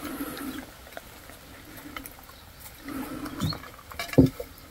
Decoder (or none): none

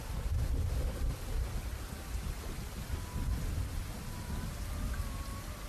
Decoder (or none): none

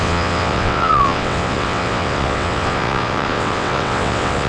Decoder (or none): vocoder, WaveNeXt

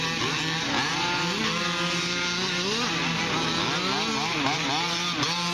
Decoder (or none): none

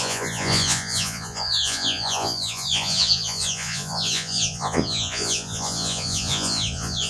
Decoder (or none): vocoder, Vocos